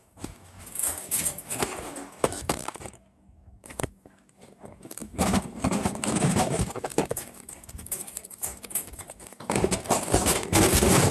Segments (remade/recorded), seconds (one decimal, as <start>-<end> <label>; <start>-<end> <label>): 0.0-11.1 remade